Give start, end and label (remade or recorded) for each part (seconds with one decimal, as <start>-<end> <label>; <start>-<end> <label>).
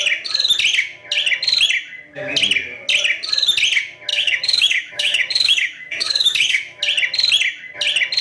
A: 0.0-4.1 recorded; 4.1-6.8 remade; 6.8-8.2 recorded